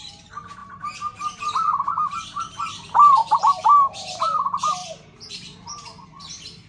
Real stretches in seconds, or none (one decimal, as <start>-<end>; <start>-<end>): none